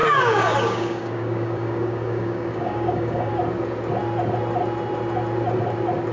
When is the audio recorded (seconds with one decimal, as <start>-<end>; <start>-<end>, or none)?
3.3-6.1